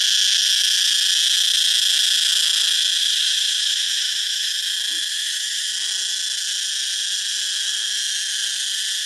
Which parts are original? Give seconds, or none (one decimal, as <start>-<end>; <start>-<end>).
0.0-3.0; 4.6-5.1; 5.7-9.1